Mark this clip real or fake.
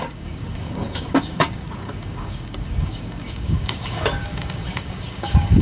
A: fake